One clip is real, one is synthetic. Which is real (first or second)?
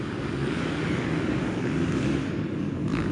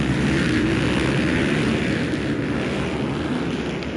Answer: second